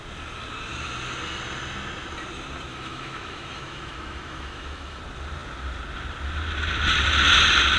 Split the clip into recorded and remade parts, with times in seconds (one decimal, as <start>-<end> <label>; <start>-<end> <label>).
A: 0.0-2.7 recorded; 2.7-5.0 remade; 5.0-7.8 recorded